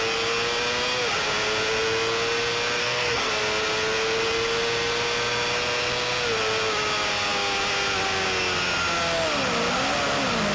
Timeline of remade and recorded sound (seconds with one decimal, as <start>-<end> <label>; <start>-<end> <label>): 0.0-2.8 recorded; 2.8-3.3 remade; 3.3-10.5 recorded